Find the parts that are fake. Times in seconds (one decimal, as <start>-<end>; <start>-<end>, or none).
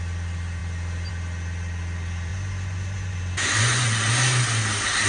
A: 2.3-4.1